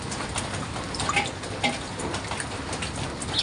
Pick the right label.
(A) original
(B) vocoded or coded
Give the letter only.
A